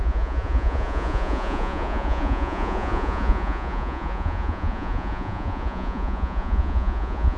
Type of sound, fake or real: fake